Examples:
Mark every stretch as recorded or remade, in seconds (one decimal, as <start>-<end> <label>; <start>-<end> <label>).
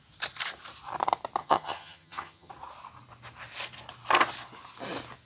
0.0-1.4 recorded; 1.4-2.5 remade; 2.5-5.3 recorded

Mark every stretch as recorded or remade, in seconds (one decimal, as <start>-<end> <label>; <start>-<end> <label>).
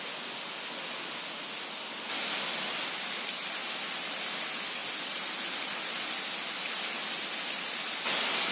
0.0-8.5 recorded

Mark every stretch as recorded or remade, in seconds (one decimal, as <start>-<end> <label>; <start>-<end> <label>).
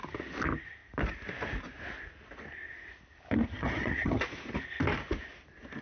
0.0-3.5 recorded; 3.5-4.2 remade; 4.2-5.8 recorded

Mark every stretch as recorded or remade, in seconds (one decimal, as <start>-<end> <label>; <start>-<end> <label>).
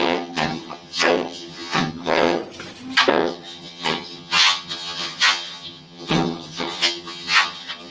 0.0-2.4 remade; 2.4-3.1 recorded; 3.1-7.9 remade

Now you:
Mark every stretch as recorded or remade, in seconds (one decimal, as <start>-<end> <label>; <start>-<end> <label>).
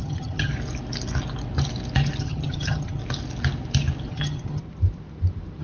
0.0-0.5 remade; 0.5-2.2 recorded; 2.2-3.0 remade; 3.0-4.1 recorded; 4.1-4.6 remade; 4.6-5.6 recorded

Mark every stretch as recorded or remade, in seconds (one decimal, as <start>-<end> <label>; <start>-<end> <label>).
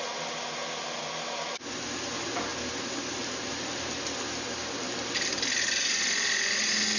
0.0-7.0 recorded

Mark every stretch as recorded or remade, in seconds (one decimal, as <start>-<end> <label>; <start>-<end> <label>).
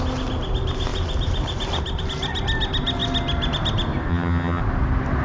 0.0-4.1 recorded; 4.1-4.6 remade; 4.6-5.2 recorded